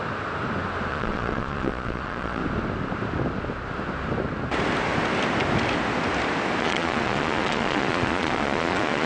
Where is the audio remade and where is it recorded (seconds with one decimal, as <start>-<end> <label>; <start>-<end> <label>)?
0.0-0.9 recorded; 0.9-2.4 remade; 2.4-6.6 recorded; 6.6-9.1 remade